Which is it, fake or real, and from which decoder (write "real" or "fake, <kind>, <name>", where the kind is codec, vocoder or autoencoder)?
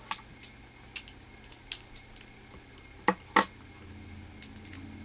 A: real